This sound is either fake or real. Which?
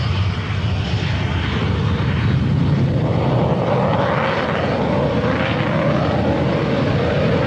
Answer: real